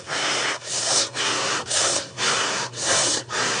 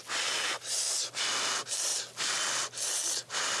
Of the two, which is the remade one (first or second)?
first